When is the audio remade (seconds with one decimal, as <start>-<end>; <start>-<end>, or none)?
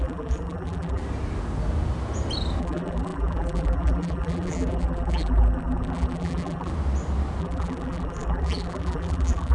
0.0-1.0; 2.6-6.7; 7.4-9.5